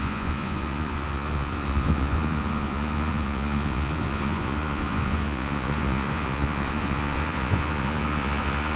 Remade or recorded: remade